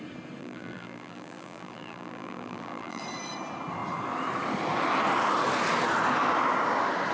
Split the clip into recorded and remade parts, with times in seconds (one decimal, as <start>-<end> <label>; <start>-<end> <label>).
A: 0.0-0.4 recorded; 0.4-3.0 remade; 3.0-7.1 recorded